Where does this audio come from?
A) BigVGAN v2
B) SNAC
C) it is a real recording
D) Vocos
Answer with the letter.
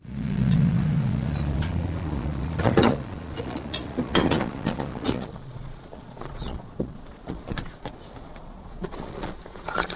D